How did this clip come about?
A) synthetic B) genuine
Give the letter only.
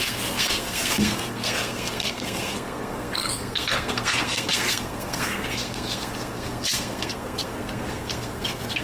A